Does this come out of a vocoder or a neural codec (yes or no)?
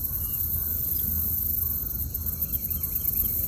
no